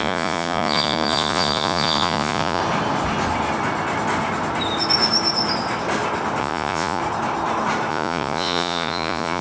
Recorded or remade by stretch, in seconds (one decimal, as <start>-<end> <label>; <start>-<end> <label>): 0.0-2.6 remade; 2.6-6.4 recorded; 6.4-7.0 remade; 7.0-7.9 recorded; 7.9-9.4 remade